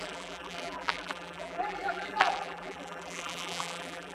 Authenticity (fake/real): fake